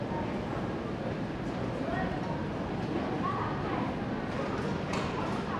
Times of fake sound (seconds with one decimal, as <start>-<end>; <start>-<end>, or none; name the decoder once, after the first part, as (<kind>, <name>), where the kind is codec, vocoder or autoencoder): none